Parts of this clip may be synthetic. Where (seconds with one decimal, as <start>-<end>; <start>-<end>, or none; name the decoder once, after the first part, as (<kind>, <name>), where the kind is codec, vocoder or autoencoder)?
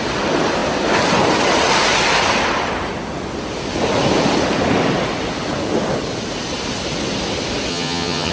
7.7-8.3 (vocoder, HiFi-GAN)